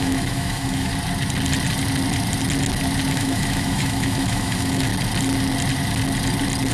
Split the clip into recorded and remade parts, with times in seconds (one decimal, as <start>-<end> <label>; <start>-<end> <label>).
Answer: 0.0-0.9 remade; 0.9-3.1 recorded; 3.1-4.9 remade; 4.9-6.7 recorded